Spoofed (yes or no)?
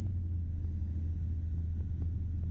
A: no